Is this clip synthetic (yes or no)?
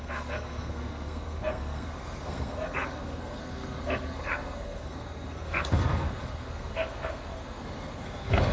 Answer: yes